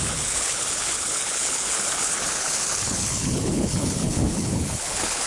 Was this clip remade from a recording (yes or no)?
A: yes